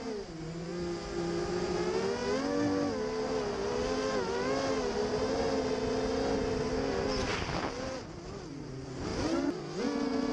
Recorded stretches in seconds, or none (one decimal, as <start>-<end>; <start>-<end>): 0.0-7.3; 7.9-10.3